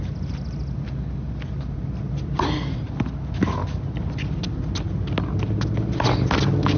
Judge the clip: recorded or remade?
recorded